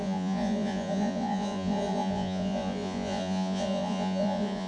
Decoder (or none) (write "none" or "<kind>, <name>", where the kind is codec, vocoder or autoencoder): vocoder, Vocos